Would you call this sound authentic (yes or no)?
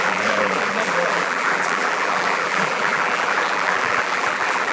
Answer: no